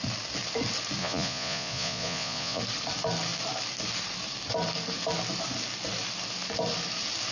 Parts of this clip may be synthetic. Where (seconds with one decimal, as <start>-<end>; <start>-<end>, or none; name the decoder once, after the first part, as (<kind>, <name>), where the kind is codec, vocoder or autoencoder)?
1.0-2.6 (vocoder, Vocos)